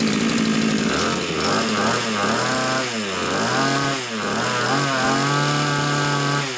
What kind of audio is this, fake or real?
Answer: real